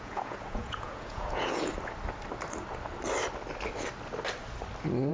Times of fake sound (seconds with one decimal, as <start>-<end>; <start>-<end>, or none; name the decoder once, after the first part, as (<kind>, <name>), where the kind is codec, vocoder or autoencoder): 0.0-1.7 (vocoder, Vocos)